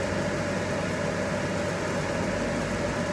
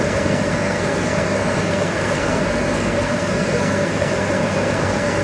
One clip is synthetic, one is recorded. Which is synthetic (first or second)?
second